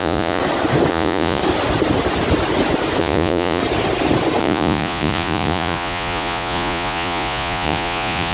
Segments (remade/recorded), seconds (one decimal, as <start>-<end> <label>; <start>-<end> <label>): 0.0-0.4 remade; 0.4-0.9 recorded; 0.9-1.4 remade; 1.4-3.0 recorded; 3.0-3.6 remade; 3.6-4.4 recorded; 4.4-8.3 remade